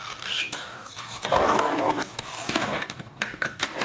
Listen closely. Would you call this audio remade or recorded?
remade